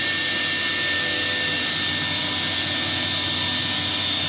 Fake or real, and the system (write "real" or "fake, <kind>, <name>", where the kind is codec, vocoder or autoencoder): real